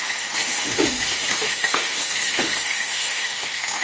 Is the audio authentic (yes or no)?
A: no